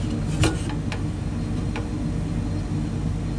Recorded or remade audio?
recorded